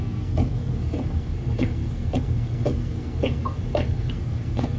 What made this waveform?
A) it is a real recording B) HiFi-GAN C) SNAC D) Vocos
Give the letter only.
C